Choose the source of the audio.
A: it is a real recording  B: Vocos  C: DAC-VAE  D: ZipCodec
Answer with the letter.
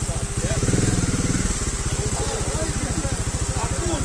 A